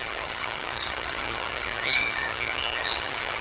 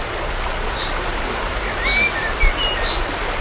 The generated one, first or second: first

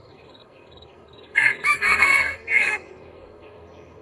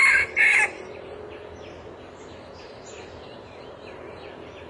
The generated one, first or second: first